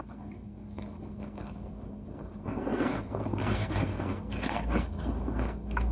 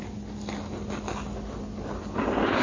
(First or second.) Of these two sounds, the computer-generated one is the first